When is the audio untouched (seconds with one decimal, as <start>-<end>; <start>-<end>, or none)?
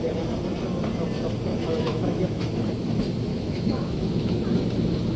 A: 0.0-1.5; 2.4-3.3; 4.4-5.2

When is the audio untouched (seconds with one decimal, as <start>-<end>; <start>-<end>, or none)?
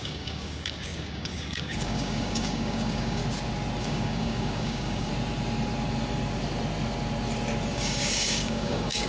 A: 3.2-3.8; 5.1-7.7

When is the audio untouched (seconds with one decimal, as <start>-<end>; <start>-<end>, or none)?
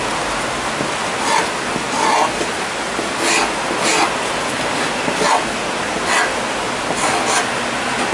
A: 0.0-8.1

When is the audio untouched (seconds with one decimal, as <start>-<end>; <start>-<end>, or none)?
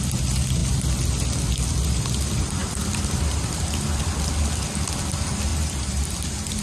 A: 0.0-2.6; 4.0-5.5; 6.1-6.6